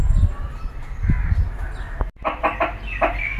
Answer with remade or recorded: recorded